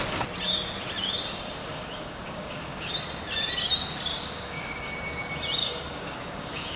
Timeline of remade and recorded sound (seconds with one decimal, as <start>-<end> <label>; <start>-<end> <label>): 0.0-1.6 recorded; 1.6-2.9 remade; 2.9-4.1 recorded; 4.1-4.9 remade; 4.9-5.6 recorded; 5.6-6.8 remade